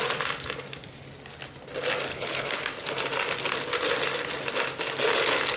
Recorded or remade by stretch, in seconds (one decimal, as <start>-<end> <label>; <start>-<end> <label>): 0.0-2.1 recorded; 2.1-2.6 remade; 2.6-5.6 recorded